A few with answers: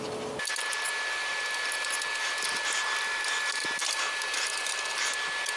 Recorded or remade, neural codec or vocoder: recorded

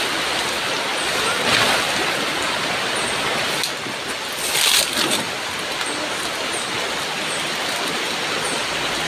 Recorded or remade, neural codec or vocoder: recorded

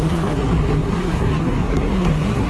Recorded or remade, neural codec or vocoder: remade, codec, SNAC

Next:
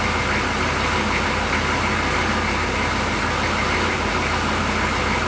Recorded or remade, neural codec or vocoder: recorded